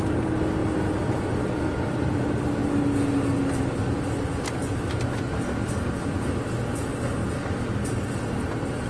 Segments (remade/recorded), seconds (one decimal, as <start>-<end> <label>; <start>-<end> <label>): 0.0-8.9 recorded